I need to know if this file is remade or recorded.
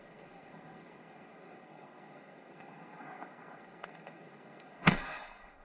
remade